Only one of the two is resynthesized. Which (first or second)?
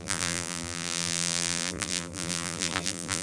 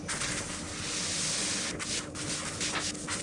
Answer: first